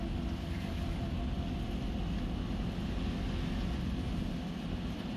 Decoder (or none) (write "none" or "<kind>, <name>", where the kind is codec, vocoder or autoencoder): none